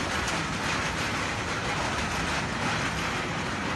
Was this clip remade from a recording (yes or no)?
no